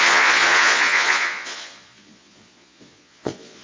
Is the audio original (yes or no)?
no